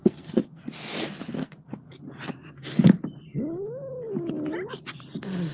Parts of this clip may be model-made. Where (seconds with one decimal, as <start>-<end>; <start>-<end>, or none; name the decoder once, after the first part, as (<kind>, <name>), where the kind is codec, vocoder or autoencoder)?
0.0-0.7 (codec, SNAC); 1.4-2.0